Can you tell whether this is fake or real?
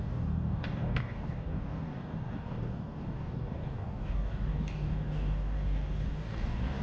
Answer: fake